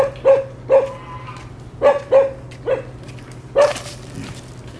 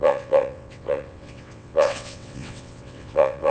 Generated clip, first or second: second